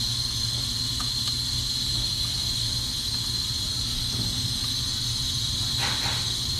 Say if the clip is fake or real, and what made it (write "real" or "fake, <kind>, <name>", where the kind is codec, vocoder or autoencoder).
real